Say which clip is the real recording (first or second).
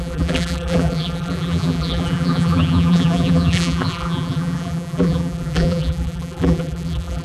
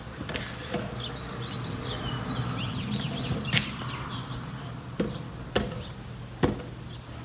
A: second